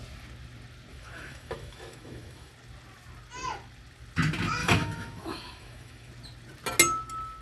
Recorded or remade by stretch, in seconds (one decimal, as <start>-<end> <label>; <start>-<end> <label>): 0.0-0.9 recorded; 0.9-2.5 remade; 2.5-4.6 recorded; 4.6-6.1 remade; 6.1-7.4 recorded